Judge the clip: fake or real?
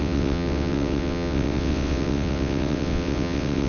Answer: fake